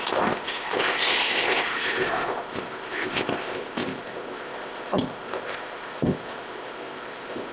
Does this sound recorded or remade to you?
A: remade